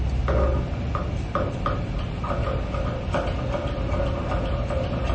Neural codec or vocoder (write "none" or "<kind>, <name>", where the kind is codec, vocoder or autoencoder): none